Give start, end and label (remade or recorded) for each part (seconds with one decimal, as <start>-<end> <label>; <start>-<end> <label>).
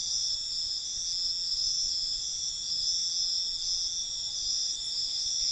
0.0-1.0 remade; 1.0-1.5 recorded; 1.5-2.9 remade; 2.9-4.0 recorded; 4.0-5.5 remade